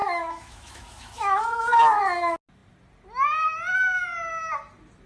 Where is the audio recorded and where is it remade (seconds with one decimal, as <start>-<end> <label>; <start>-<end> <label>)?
0.0-2.0 remade; 2.0-5.1 recorded